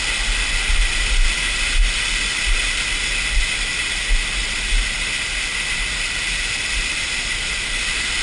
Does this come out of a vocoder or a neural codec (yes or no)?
no